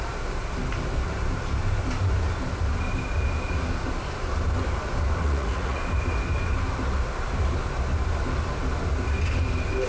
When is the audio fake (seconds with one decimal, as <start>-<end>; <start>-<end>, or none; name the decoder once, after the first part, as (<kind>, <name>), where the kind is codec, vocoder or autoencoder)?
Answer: 5.2-5.8 (vocoder, Vocos)